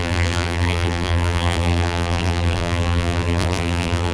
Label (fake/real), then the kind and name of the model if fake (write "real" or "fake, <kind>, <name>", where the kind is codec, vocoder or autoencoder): fake, vocoder, BigVGAN v2